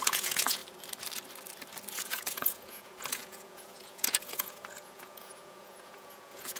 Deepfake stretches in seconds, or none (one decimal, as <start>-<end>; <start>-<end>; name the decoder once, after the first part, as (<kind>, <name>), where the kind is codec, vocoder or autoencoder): 0.0-0.6 (vocoder, Vocos); 1.9-6.6

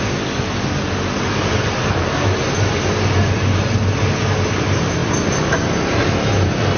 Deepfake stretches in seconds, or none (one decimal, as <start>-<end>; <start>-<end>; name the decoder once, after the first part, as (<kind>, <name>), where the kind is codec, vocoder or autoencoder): none

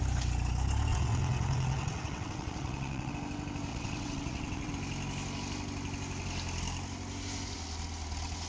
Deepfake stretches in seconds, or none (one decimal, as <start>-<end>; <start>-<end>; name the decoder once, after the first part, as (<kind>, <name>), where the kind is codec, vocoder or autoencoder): 0.9-3.1 (vocoder, WaveNeXt); 3.7-4.7